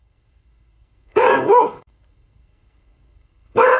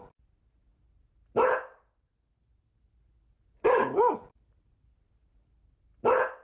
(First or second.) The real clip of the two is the second